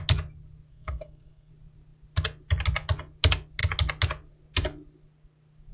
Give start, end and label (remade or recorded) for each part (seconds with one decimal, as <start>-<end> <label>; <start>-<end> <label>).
0.0-0.7 recorded; 0.7-1.5 remade; 1.5-5.7 recorded